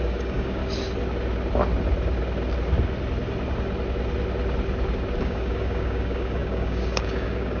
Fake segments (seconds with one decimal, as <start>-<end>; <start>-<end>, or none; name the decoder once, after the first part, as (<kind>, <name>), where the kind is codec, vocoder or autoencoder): 0.0-0.6 (codec, DAC); 5.2-7.6